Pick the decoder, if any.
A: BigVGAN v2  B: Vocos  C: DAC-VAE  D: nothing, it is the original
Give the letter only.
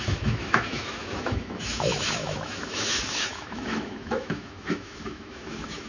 C